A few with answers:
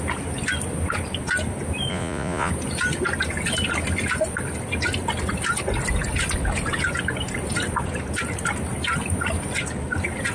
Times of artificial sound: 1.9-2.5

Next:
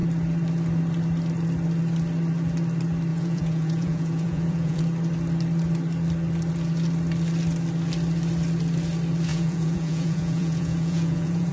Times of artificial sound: 3.1-4.8; 9.3-11.5

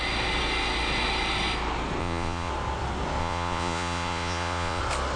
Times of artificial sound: 2.0-2.5; 3.2-4.8